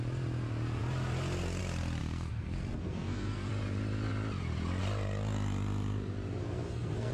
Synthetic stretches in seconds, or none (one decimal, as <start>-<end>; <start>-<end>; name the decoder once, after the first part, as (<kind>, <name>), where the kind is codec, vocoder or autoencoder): 2.0-3.5 (codec, SNAC); 6.4-7.1